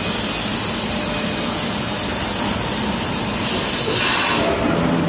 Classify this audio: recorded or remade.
recorded